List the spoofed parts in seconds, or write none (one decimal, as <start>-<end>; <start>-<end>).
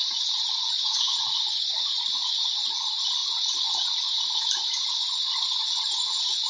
0.0-2.7